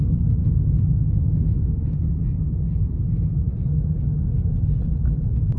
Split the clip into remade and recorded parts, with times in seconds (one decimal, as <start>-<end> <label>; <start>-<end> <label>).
0.0-0.4 recorded; 0.4-2.0 remade; 2.0-5.6 recorded